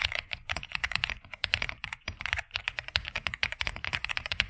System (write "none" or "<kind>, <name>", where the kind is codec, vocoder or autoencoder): vocoder, Vocos